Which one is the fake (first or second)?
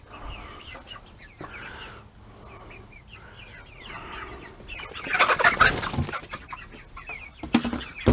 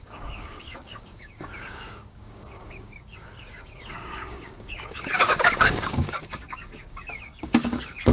second